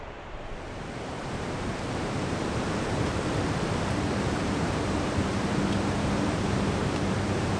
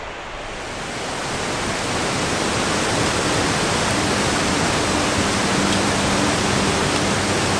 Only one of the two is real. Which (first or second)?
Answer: second